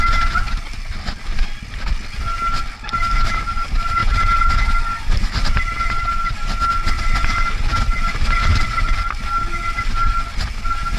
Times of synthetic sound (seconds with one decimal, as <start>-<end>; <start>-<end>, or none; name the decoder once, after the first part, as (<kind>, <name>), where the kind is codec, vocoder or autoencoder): none